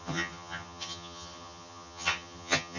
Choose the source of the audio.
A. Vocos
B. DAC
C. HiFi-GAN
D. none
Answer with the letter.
C